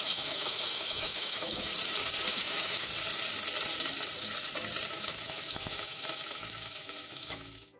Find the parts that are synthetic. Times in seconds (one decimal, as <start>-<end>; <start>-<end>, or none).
0.0-1.7; 2.3-2.9; 4.9-7.8